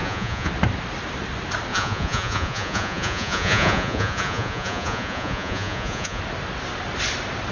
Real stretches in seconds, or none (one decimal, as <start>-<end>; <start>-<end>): 0.5-1.7; 6.2-7.5

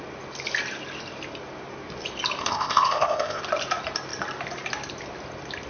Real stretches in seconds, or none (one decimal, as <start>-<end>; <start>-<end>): 0.0-2.4; 3.4-5.7

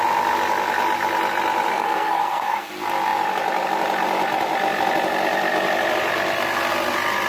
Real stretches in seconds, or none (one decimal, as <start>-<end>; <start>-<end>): 0.0-1.7; 2.7-7.3

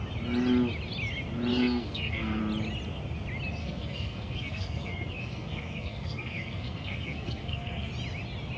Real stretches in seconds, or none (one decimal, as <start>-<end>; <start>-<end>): 0.0-1.5; 2.4-3.6; 7.9-8.6

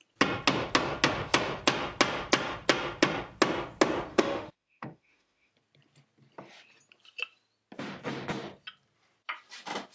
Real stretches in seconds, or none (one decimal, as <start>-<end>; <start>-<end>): 0.0-4.1; 5.5-9.9